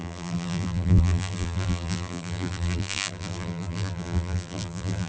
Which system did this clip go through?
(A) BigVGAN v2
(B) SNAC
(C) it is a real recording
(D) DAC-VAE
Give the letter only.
A